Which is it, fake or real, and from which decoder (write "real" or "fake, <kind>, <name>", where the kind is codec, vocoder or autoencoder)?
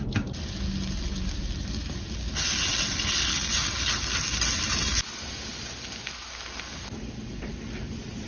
real